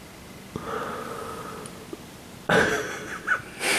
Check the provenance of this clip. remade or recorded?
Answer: recorded